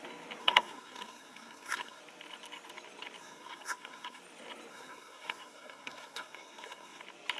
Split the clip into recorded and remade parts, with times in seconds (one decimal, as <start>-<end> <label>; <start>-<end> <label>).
0.0-0.4 recorded; 0.4-2.0 remade; 2.0-3.2 recorded; 3.2-4.2 remade; 4.2-4.7 recorded; 4.7-7.0 remade; 7.0-7.4 recorded